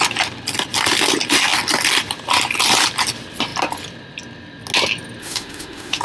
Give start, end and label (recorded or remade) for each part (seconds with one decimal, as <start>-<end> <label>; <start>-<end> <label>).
0.0-5.2 recorded; 5.2-6.0 remade